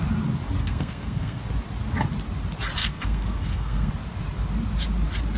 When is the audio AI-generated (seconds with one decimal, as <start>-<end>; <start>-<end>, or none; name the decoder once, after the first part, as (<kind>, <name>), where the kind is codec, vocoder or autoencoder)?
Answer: 0.6-1.4 (codec, SNAC); 2.8-3.9